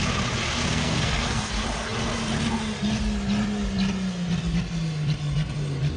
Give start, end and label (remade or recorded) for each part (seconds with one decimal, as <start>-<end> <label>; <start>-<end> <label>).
0.0-0.7 recorded; 0.7-1.5 remade; 1.5-6.0 recorded